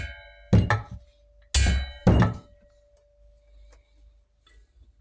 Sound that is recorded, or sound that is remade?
recorded